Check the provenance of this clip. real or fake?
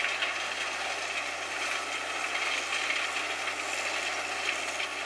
real